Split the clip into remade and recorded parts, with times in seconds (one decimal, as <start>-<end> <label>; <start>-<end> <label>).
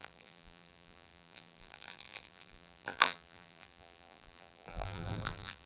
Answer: 0.0-5.7 remade